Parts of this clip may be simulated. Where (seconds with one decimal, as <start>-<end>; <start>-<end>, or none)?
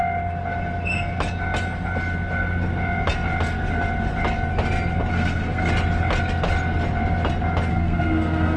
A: 5.1-5.7; 7.7-8.6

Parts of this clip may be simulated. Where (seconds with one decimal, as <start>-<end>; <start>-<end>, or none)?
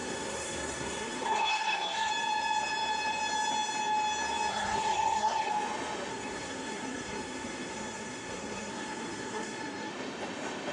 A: 0.0-2.1; 4.5-5.5; 6.1-9.9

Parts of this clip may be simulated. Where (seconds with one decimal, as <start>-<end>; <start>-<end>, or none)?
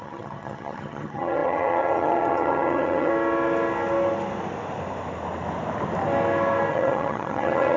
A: 0.0-3.1; 6.7-7.8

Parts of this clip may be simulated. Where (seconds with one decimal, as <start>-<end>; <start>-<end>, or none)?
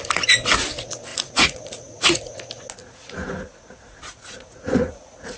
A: 1.1-2.4; 2.8-5.4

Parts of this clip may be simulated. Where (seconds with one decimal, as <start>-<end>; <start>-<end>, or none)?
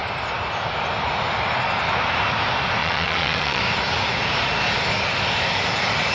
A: 2.8-3.6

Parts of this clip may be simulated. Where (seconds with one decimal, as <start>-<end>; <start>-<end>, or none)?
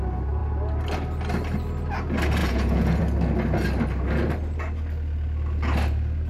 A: 2.4-3.0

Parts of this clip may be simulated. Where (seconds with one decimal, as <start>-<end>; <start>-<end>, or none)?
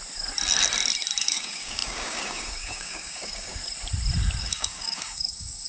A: 1.2-3.6; 4.4-5.7